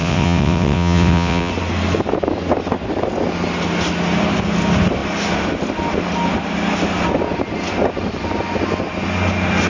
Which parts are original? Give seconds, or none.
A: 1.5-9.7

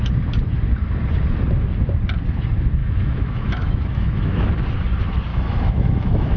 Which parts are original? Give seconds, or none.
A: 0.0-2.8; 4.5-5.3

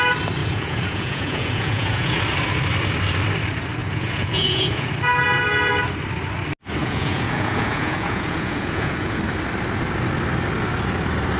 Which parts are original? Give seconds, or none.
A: 0.0-0.4; 2.2-3.8; 4.9-6.8; 9.2-11.4

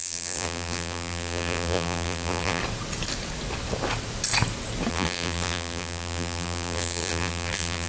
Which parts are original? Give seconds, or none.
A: 2.6-4.9